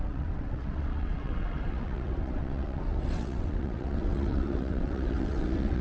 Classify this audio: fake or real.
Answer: fake